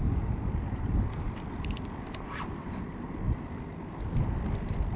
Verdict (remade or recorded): remade